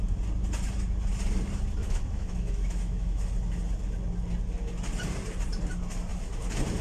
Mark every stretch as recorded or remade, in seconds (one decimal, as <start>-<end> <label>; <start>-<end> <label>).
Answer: 0.0-1.8 recorded; 1.8-3.3 remade; 3.3-6.8 recorded

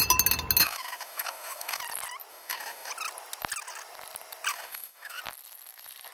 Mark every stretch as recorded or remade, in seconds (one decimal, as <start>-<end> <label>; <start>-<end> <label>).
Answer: 0.0-0.6 recorded; 0.6-1.8 remade; 1.8-2.3 recorded; 2.3-2.9 remade; 2.9-4.5 recorded; 4.5-5.2 remade; 5.2-6.1 recorded

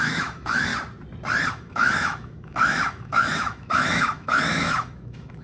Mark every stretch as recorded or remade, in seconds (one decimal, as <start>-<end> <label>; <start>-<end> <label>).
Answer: 0.0-0.7 remade; 0.7-1.5 recorded; 1.5-5.4 remade

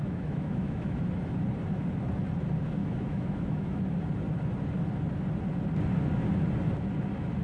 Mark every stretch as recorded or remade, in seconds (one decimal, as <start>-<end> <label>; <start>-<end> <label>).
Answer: 0.0-1.1 remade; 1.1-2.8 recorded; 2.8-3.8 remade; 3.8-7.4 recorded